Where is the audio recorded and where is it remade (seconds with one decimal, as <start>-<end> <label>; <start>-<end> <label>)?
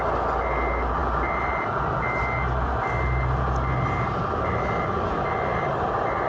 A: 0.0-6.3 recorded